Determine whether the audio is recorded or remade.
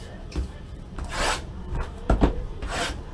remade